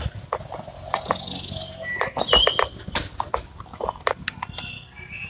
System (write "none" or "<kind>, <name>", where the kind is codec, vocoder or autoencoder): none